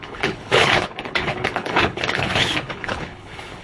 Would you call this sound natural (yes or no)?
no